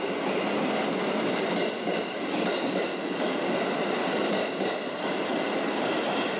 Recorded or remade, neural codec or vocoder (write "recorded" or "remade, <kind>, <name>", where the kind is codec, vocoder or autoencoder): recorded